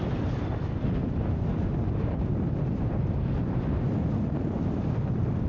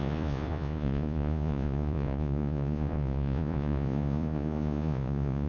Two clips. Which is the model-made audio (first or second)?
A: second